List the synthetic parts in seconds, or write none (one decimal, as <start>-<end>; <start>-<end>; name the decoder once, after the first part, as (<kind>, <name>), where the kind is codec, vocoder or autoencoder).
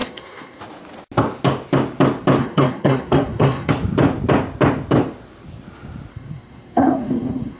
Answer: 0.0-0.6 (codec, SNAC); 2.4-3.7; 6.1-7.6